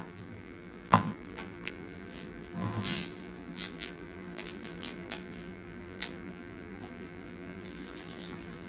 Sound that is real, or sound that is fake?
fake